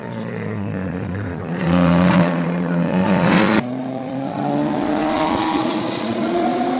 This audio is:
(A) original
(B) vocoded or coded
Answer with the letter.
B